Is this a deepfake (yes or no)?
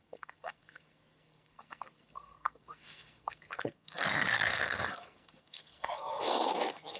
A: yes